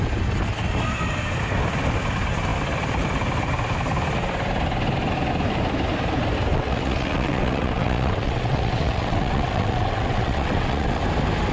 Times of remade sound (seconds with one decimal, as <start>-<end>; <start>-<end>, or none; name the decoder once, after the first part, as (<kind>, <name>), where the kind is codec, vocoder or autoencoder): 6.5-11.0 (vocoder, WaveNeXt)